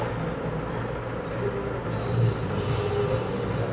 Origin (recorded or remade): recorded